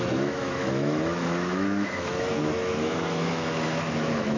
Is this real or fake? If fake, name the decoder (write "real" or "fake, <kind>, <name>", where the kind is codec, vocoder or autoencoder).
fake, autoencoder, DAC-VAE